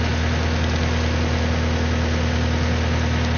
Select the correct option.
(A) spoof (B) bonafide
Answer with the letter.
B